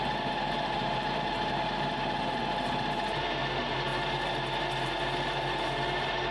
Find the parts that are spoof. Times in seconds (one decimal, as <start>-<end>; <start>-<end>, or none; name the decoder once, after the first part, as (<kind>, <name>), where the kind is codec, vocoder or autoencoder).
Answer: none